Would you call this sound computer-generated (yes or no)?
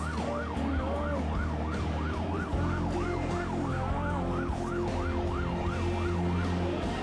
yes